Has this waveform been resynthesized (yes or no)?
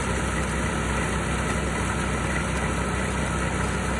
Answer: no